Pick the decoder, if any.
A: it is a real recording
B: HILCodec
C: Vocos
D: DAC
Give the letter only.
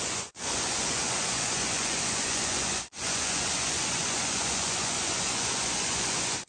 C